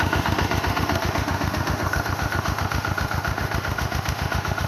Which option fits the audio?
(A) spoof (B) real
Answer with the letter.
A